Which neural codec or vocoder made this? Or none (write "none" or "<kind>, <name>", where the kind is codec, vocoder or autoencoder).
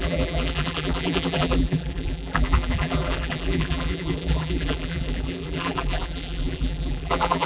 vocoder, BigVGAN v2